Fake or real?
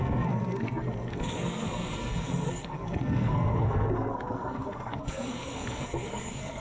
fake